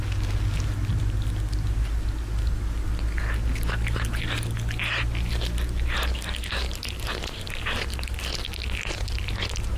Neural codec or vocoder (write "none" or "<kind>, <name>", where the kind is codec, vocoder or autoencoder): none